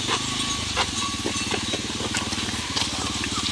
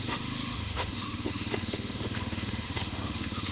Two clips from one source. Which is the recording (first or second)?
first